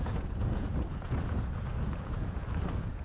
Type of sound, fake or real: fake